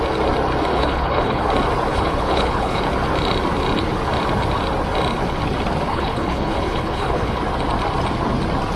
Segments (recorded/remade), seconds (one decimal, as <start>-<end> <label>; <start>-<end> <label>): 0.0-0.7 recorded; 0.7-1.5 remade; 1.5-1.9 recorded; 1.9-2.8 remade; 2.8-5.9 recorded; 5.9-7.4 remade; 7.4-8.8 recorded